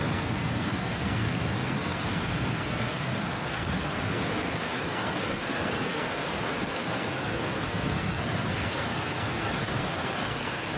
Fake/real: fake